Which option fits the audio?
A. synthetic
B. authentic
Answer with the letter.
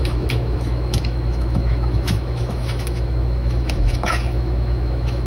A